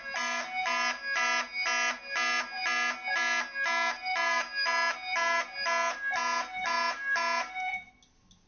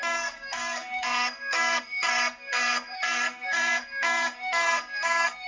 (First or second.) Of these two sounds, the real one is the first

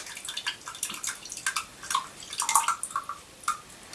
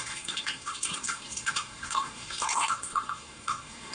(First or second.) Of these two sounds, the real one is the first